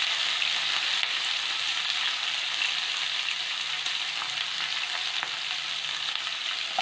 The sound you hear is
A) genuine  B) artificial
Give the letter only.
A